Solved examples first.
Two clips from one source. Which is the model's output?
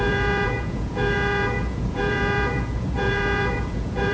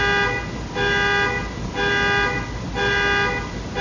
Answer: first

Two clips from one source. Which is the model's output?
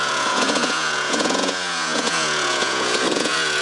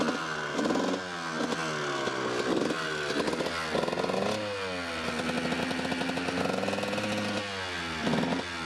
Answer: first